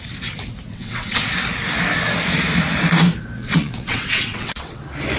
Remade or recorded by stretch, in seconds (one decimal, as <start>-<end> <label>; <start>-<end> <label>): 0.0-0.7 recorded; 0.7-1.3 remade; 1.3-3.4 recorded; 3.4-4.8 remade; 4.8-5.2 recorded